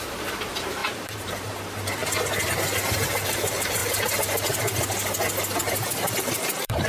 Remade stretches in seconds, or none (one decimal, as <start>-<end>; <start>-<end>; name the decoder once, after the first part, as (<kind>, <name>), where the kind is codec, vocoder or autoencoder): 0.0-2.0 (vocoder, BigVGAN v2); 3.0-3.8; 6.2-6.9